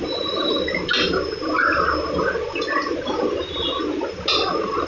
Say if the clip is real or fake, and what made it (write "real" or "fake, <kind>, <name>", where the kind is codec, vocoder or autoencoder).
real